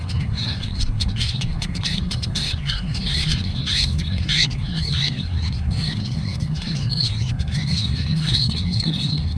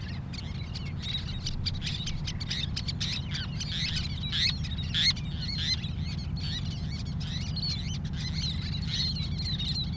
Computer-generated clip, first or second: first